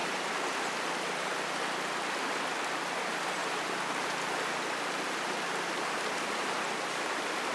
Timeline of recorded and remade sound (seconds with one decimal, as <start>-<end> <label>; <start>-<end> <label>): 0.0-3.4 remade; 3.4-6.9 recorded; 6.9-7.5 remade